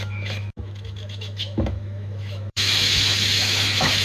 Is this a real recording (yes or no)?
no